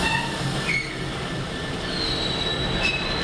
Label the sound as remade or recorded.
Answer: recorded